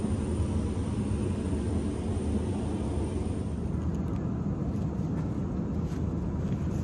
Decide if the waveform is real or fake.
real